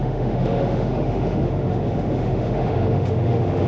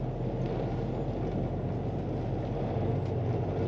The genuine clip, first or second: second